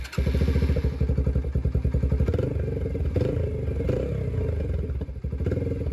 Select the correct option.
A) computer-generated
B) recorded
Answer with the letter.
B